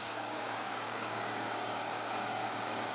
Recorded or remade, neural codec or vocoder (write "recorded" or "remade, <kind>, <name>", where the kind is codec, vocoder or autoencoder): remade, codec, DAC